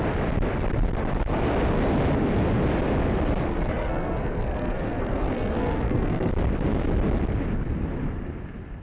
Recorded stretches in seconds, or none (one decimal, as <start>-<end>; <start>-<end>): 0.0-3.5; 6.3-8.8